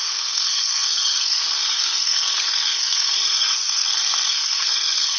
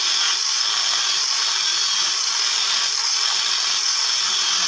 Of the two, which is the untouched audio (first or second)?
second